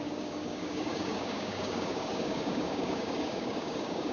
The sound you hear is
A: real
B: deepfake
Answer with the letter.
B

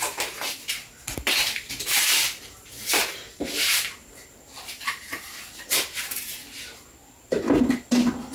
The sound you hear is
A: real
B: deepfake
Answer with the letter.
A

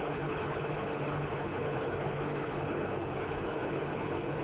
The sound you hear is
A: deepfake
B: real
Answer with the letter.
A